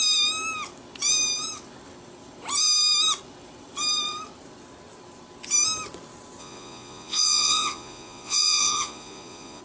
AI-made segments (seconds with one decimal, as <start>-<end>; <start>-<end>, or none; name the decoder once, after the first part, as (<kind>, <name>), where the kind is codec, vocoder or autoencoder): 6.4-9.6 (vocoder, Vocos)